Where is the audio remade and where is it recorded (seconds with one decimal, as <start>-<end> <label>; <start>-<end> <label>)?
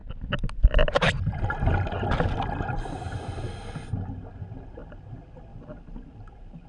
0.0-6.7 recorded